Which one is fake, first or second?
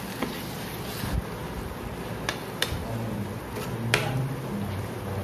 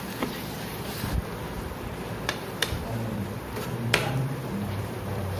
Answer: second